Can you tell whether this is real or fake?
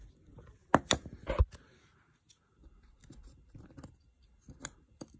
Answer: real